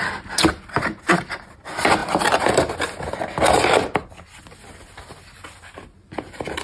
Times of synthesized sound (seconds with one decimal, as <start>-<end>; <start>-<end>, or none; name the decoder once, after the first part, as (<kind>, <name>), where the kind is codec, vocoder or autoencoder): none